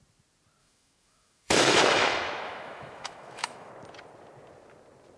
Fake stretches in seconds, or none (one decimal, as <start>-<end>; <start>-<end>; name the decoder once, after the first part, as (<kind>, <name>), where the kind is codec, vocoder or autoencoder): 0.6-3.7 (autoencoder, DAC-VAE)